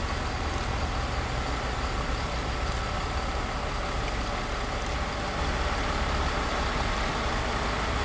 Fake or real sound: real